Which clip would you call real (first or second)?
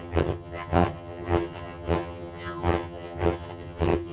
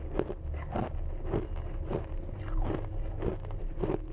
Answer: second